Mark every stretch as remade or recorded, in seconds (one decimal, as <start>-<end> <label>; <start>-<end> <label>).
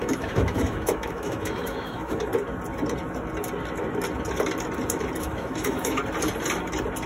0.0-2.3 remade; 2.3-5.2 recorded; 5.2-6.0 remade; 6.0-7.1 recorded